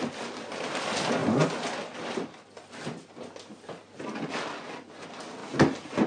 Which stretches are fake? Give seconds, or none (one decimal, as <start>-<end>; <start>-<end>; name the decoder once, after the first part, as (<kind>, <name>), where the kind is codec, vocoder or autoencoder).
none